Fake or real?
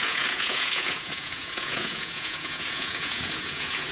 fake